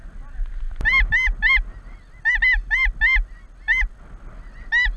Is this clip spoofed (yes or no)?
no